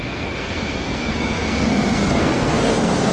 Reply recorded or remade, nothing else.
remade